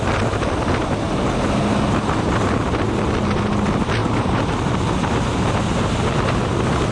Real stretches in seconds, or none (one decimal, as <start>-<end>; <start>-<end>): 0.0-6.9